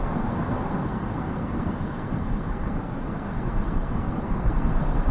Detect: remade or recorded remade